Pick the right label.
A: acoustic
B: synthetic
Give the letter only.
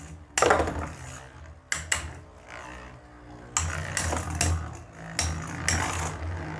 A